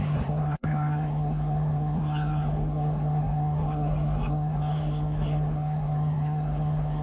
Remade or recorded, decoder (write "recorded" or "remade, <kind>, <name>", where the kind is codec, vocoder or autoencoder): remade, codec, SNAC